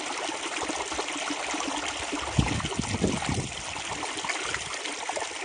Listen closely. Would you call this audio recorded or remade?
recorded